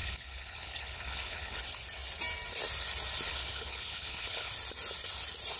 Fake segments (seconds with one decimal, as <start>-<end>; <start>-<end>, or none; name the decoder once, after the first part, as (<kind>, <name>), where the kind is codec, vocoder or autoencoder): 0.0-1.6 (codec, HILCodec); 3.3-4.5